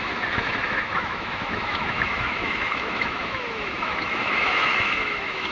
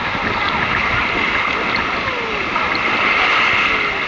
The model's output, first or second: first